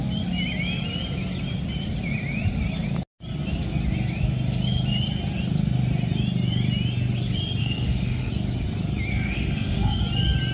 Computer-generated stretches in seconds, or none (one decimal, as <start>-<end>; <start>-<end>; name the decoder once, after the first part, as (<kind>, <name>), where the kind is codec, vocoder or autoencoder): 7.6-8.3 (autoencoder, DAC-VAE); 9.1-10.0